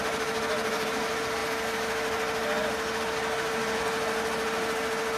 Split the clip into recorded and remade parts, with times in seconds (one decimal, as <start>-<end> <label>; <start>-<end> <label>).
0.0-5.2 recorded